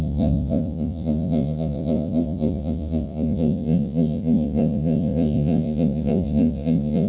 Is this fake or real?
fake